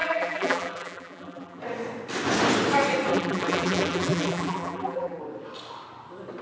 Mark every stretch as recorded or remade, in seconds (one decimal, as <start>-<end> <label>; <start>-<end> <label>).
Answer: 0.0-1.6 remade; 1.6-3.1 recorded; 3.1-5.2 remade; 5.2-6.4 recorded